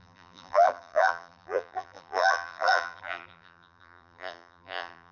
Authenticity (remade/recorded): remade